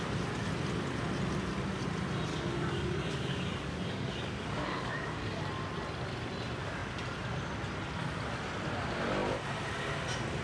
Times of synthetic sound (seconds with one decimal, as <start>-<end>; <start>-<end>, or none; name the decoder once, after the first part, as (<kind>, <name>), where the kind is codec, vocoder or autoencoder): 2.3-5.4 (codec, DAC)